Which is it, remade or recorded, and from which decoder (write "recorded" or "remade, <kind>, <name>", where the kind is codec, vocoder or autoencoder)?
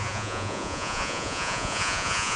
remade, vocoder, Vocos